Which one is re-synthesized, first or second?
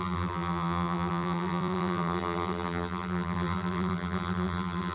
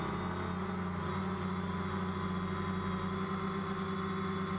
first